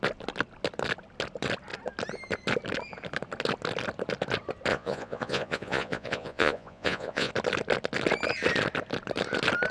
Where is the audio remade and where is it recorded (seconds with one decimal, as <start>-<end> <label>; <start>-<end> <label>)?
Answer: 0.0-4.7 recorded; 4.7-7.3 remade; 7.3-9.7 recorded